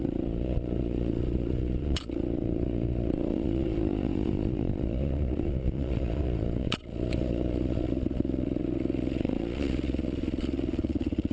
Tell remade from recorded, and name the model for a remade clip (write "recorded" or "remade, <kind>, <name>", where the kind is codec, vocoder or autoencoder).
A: remade, vocoder, Vocos